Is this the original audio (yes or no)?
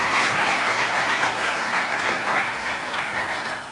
no